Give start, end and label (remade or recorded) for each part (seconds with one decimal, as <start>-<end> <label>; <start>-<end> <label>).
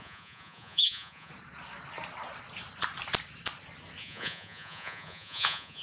0.0-1.3 remade; 1.3-4.0 recorded; 4.0-5.8 remade